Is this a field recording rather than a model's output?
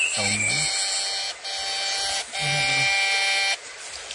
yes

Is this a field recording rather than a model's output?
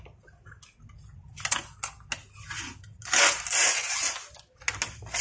yes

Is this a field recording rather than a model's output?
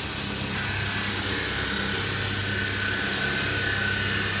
yes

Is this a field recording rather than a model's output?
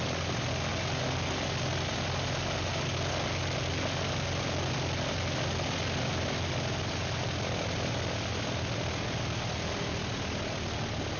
yes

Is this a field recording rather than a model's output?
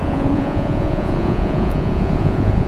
no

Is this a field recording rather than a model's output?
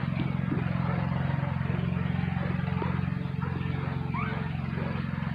yes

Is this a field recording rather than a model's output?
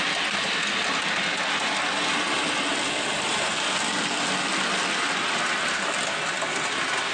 yes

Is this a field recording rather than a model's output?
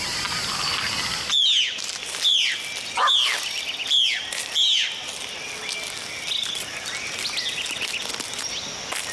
yes